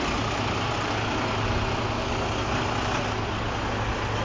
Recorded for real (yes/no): yes